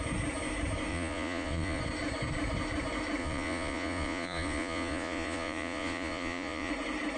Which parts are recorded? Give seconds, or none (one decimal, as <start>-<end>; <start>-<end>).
0.0-0.9; 1.8-3.2; 6.7-7.2